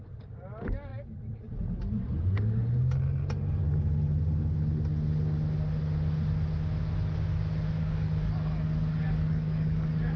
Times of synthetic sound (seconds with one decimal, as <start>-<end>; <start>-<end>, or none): 7.8-10.2